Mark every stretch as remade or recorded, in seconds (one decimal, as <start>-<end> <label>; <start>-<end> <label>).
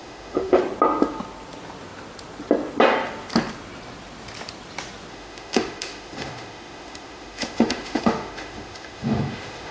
0.0-0.6 remade; 0.6-5.1 recorded; 5.1-9.7 remade